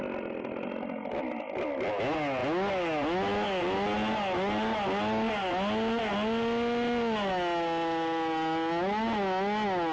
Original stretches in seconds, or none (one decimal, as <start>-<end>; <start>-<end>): 0.0-9.9

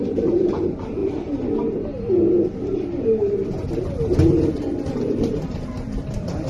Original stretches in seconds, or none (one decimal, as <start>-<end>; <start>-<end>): 1.0-4.9

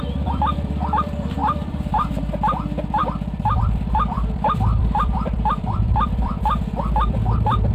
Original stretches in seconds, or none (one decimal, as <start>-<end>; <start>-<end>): none

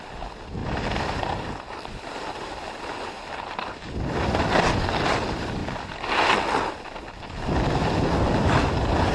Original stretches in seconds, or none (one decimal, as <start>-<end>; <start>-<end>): 0.0-9.1

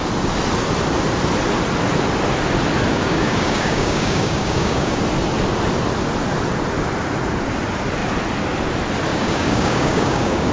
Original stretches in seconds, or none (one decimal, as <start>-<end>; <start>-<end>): 0.0-2.9; 5.0-9.1

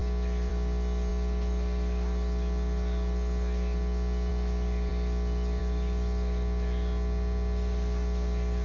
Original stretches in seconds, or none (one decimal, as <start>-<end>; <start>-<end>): 0.0-8.6

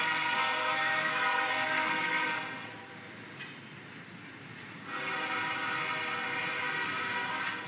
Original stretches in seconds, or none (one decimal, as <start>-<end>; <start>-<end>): 2.7-6.6